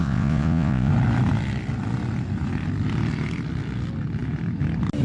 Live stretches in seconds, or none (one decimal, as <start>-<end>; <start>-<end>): 0.9-5.0